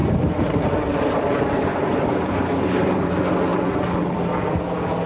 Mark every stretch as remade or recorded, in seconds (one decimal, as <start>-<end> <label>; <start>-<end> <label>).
0.0-3.1 remade; 3.1-5.1 recorded